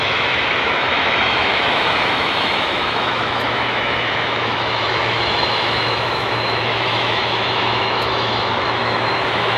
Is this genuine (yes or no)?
no